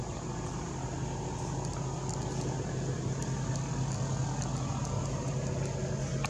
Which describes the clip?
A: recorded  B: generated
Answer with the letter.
A